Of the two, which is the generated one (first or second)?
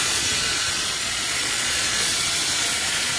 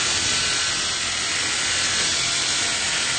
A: first